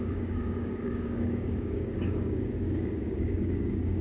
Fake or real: fake